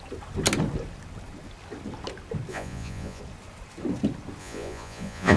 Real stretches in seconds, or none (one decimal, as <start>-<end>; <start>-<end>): 0.0-2.5; 3.2-4.4